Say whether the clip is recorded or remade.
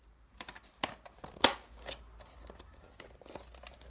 recorded